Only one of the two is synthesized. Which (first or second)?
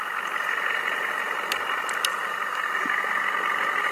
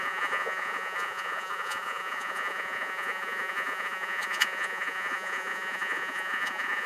second